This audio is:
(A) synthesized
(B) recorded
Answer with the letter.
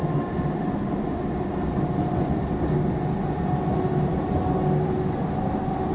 B